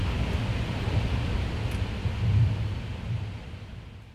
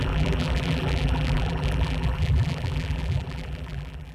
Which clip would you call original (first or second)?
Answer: first